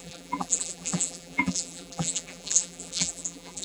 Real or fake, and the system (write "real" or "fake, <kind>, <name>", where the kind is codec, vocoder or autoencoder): fake, vocoder, BigVGAN v2